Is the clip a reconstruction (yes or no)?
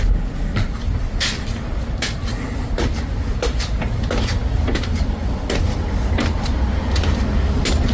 no